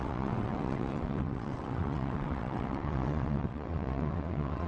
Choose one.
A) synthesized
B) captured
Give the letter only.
A